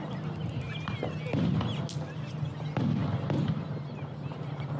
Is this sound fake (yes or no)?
no